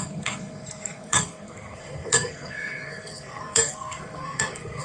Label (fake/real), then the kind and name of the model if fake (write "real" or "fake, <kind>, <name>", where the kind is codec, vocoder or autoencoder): fake, codec, SNAC